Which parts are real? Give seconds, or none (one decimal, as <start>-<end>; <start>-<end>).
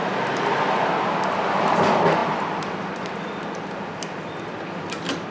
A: 0.0-1.4